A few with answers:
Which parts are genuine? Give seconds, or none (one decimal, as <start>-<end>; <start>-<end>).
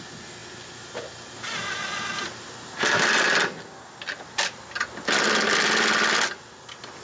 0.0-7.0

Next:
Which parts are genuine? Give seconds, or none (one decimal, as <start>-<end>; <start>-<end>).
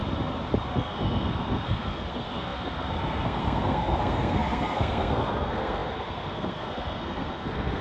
0.0-0.7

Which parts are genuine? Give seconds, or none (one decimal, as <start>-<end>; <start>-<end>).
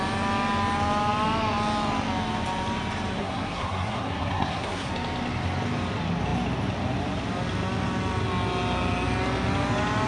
0.0-3.2; 4.9-10.1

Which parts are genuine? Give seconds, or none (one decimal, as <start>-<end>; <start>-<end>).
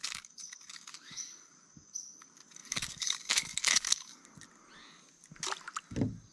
4.2-6.3